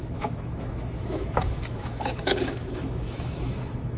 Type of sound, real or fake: fake